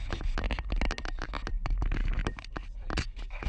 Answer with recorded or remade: recorded